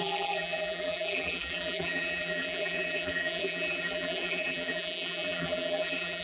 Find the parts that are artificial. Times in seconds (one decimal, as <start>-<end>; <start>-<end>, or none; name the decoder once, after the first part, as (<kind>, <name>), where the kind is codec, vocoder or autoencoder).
0.0-6.2 (vocoder, BigVGAN v2)